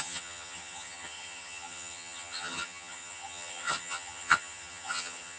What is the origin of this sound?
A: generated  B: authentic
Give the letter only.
A